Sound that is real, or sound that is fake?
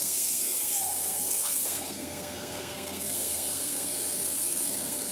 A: fake